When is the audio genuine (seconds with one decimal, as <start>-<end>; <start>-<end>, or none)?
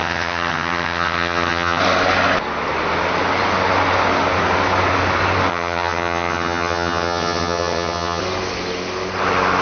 1.8-5.5; 8.2-9.6